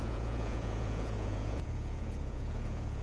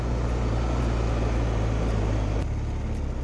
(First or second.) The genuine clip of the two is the second